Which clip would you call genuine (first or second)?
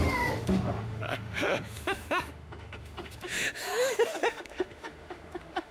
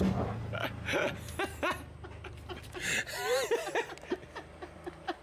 second